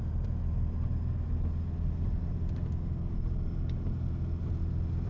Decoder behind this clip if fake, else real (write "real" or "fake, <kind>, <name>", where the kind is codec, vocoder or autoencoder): real